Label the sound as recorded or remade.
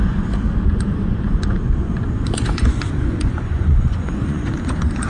remade